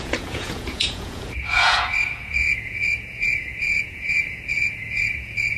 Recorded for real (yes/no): no